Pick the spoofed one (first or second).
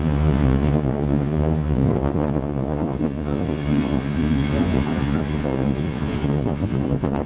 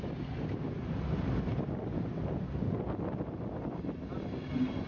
first